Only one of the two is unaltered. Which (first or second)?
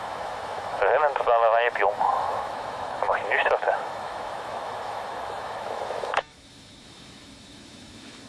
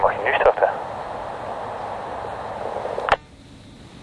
second